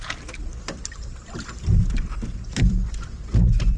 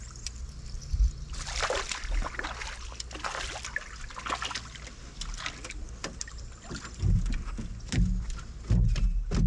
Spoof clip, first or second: first